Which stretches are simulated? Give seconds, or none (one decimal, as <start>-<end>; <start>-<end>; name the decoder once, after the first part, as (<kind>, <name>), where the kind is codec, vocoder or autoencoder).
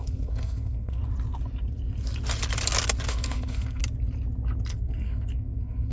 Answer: 0.0-1.0 (codec, SNAC); 3.1-3.8; 4.7-5.9